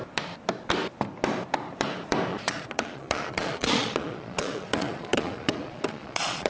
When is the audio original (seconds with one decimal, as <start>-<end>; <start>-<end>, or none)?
0.0-2.3